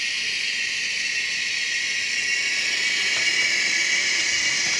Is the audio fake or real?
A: real